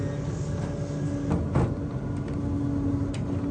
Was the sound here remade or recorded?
recorded